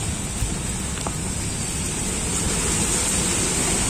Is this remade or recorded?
recorded